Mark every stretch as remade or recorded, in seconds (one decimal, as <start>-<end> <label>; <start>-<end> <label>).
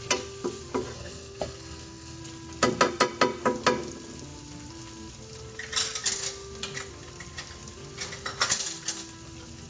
0.0-0.9 recorded; 0.9-2.2 remade; 2.2-9.7 recorded